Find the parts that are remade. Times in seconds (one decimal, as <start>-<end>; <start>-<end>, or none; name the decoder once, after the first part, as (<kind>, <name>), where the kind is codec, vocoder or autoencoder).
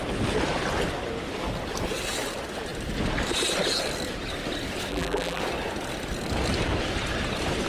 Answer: 4.9-5.4 (vocoder, BigVGAN v2)